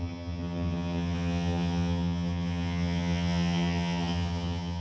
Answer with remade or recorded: remade